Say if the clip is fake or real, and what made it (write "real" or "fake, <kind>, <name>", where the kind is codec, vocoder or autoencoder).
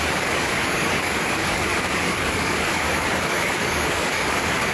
fake, codec, DAC